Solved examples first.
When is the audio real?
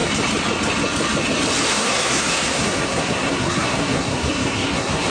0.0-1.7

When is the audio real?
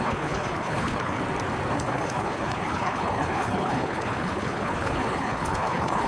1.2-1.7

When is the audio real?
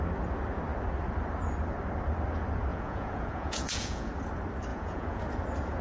0.0-2.7; 4.1-4.7; 5.2-5.8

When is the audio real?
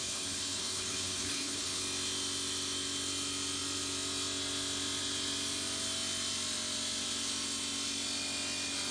1.8-8.9